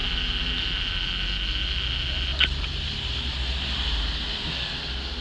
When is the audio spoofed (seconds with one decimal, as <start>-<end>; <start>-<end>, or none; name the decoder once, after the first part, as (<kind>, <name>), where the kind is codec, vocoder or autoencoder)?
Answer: none